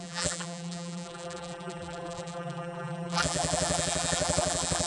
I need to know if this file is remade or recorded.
remade